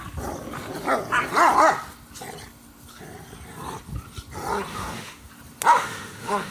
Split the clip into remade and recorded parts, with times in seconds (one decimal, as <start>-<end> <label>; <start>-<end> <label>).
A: 0.0-4.7 recorded; 4.7-5.3 remade; 5.3-5.7 recorded; 5.7-6.5 remade